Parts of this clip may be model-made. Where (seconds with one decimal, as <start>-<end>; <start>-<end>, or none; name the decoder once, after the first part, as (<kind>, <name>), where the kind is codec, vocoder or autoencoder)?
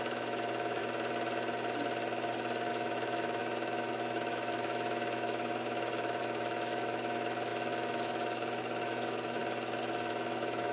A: 0.0-0.8 (autoencoder, DAC-VAE); 2.7-9.4; 10.1-10.7